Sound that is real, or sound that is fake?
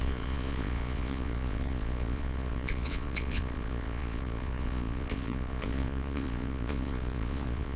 fake